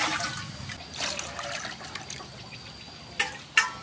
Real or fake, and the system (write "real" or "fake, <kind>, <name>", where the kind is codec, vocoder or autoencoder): real